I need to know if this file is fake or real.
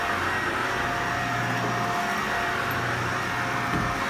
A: real